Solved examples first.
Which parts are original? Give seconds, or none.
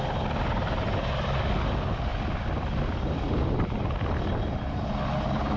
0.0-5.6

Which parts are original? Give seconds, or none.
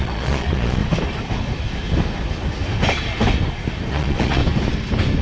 0.8-3.9; 4.4-5.2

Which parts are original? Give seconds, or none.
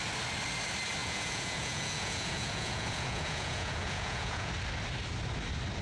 0.0-1.0; 4.5-5.8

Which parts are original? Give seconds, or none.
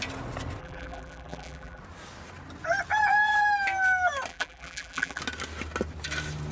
0.0-0.6; 1.8-4.3; 5.2-6.5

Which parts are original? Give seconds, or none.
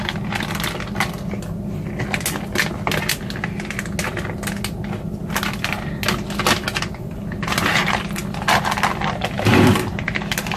0.0-7.8; 9.2-10.6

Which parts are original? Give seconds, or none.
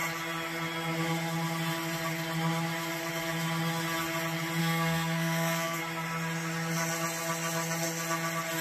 0.0-4.6; 5.8-8.6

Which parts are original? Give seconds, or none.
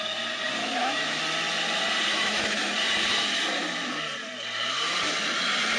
0.0-0.6; 1.2-2.1; 2.7-5.8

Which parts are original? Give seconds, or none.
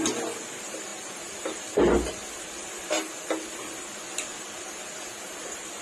0.0-5.8